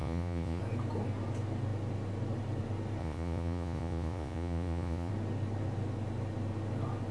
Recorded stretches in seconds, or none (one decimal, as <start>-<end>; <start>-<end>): 0.6-3.0; 5.1-7.1